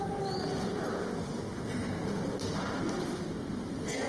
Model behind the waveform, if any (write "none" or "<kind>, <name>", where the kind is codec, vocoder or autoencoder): none